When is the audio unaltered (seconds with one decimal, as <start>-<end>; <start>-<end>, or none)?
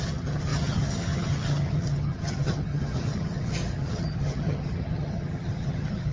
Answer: none